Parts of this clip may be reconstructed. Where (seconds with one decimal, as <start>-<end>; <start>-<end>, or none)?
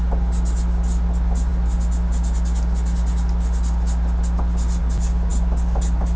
none